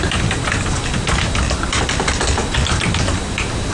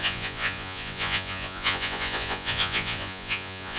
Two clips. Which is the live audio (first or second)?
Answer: first